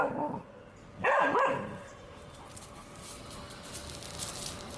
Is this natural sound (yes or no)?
yes